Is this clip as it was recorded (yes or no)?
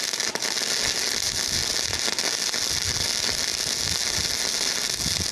yes